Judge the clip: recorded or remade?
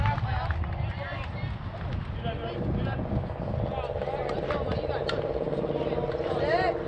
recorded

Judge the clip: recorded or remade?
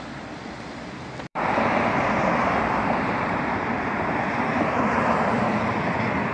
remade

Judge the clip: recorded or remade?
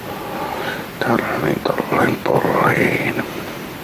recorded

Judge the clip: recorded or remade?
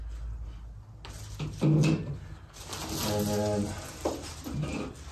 recorded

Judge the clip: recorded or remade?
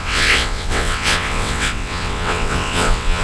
remade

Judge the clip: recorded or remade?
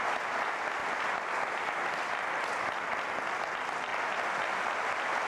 remade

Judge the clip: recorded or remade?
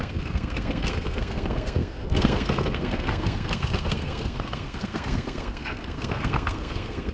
remade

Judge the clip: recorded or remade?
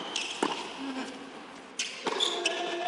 recorded